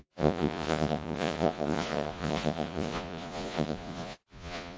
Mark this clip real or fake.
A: fake